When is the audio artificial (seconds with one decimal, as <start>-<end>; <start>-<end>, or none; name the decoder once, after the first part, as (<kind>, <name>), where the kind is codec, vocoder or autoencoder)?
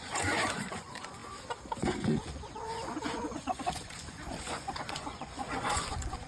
0.0-1.2 (vocoder, Vocos); 1.8-6.3